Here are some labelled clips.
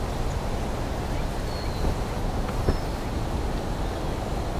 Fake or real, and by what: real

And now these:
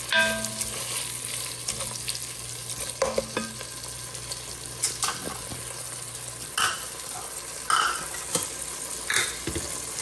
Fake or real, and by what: real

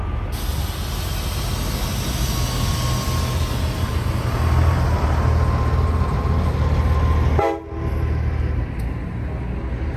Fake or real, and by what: real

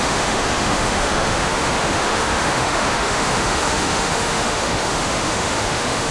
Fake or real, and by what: fake, autoencoder, DAC-VAE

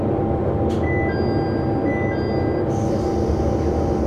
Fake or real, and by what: real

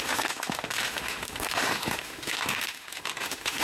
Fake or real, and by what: fake, autoencoder, DAC-VAE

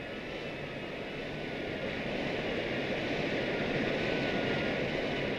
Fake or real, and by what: real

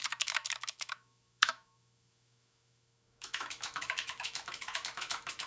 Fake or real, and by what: fake, autoencoder, DAC-VAE